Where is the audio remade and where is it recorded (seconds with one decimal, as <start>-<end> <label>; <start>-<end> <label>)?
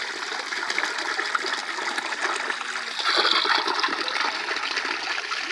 0.0-5.5 recorded